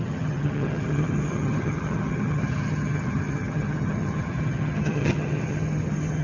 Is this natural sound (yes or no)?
no